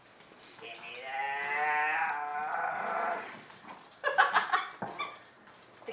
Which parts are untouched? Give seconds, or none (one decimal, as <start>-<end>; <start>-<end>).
0.0-2.3